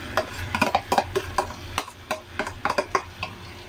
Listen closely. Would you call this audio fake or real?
real